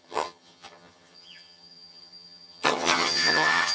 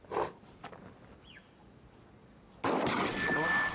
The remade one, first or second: first